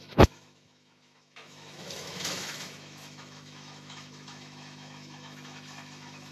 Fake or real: fake